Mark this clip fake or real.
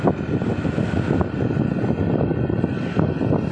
real